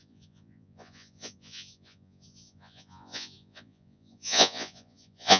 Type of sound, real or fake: fake